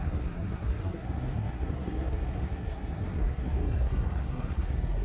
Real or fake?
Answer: fake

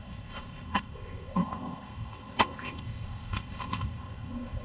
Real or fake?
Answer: fake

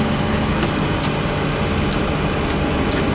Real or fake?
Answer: real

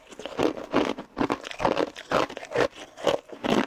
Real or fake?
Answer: real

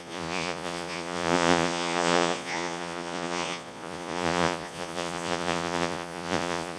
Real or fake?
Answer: fake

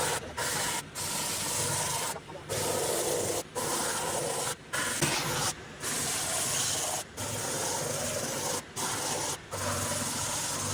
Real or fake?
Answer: real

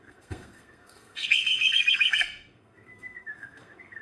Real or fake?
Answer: fake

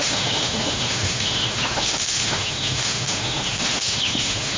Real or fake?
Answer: fake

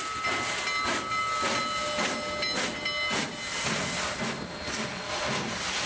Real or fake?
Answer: real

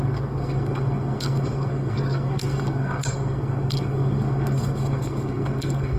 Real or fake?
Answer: fake